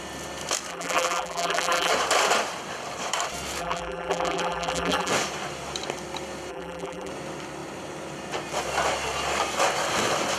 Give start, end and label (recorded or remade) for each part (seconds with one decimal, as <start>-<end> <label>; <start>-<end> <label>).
0.0-0.7 recorded; 0.7-1.9 remade; 1.9-3.6 recorded; 3.6-5.1 remade; 5.1-6.5 recorded; 6.5-7.1 remade; 7.1-10.4 recorded